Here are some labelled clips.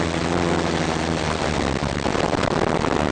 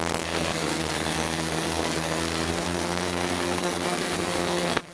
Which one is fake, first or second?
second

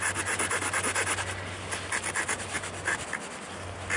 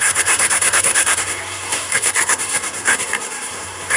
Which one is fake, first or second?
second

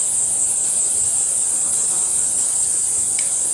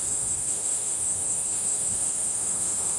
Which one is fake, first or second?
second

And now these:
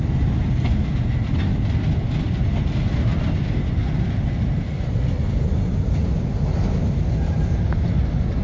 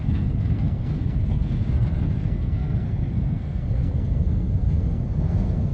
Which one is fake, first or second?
second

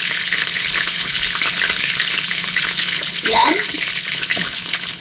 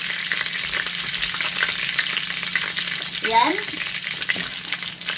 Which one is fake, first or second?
first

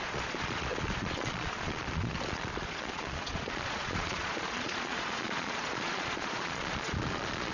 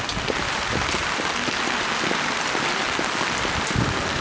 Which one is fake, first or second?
first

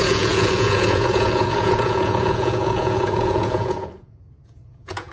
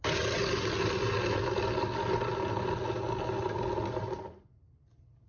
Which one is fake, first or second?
first